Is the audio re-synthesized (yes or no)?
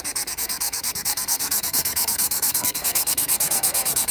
yes